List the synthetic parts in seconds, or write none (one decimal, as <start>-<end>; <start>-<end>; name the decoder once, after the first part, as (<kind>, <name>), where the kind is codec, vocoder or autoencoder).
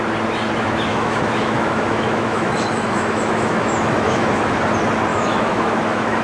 0.9-4.6 (autoencoder, DAC-VAE); 5.1-6.2